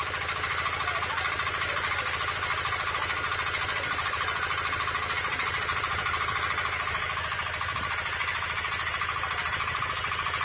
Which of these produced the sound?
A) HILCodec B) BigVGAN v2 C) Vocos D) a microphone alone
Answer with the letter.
D